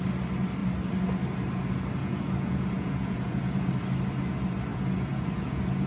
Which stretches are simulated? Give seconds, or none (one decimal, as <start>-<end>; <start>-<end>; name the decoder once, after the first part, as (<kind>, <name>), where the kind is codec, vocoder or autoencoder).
2.0-3.7 (vocoder, Vocos); 4.7-5.9